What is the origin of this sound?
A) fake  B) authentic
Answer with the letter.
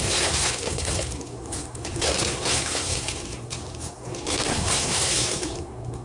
A